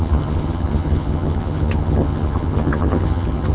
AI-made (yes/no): yes